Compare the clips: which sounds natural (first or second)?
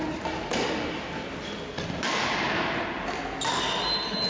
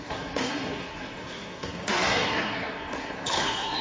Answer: first